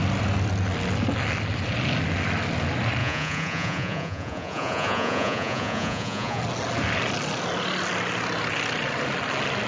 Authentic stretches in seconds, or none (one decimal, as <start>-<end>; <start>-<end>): 0.0-3.0; 6.4-9.7